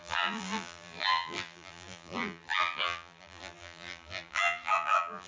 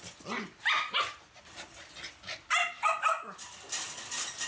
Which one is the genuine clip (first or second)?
second